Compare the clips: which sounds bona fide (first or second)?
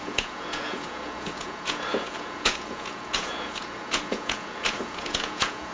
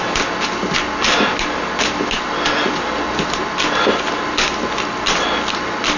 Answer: second